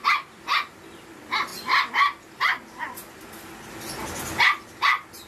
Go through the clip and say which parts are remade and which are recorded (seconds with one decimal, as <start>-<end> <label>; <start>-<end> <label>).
0.0-5.3 recorded